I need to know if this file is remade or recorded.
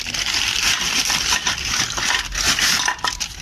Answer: recorded